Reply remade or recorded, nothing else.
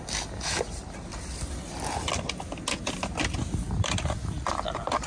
recorded